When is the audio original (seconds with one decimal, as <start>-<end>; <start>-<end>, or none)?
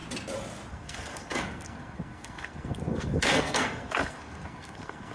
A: 0.0-0.7